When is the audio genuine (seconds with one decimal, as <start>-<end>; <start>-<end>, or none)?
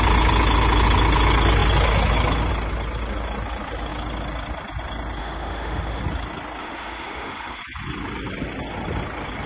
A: 0.0-5.2; 6.0-6.6; 7.6-9.5